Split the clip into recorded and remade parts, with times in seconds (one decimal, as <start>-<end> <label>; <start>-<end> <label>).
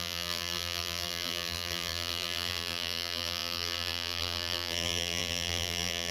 0.0-6.1 remade